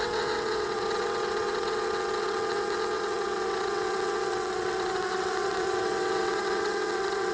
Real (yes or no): no